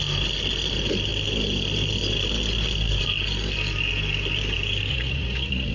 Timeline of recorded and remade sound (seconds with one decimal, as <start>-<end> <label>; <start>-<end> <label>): 0.0-4.9 recorded; 4.9-5.7 remade